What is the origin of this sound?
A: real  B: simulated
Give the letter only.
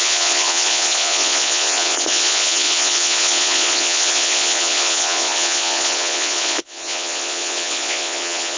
B